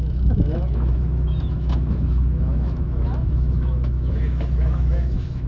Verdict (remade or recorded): remade